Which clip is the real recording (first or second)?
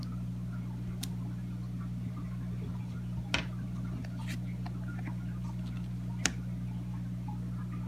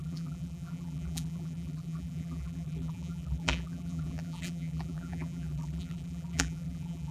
first